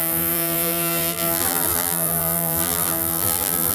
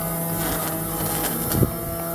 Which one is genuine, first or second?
second